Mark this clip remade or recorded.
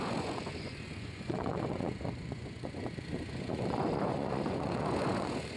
remade